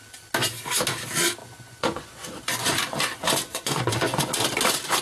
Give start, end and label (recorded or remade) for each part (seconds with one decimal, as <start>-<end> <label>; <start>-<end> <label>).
0.0-1.4 recorded; 1.4-4.3 remade; 4.3-5.0 recorded